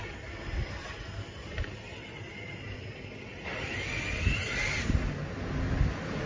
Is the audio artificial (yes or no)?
no